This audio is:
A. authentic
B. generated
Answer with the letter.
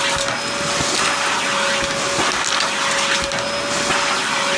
A